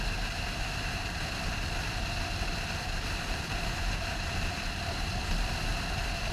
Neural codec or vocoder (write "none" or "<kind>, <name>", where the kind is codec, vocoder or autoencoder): vocoder, BigVGAN v2